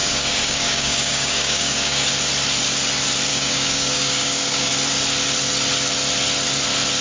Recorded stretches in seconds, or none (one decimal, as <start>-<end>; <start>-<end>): 2.1-3.3; 4.7-7.0